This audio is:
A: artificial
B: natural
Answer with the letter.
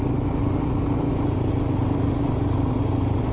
B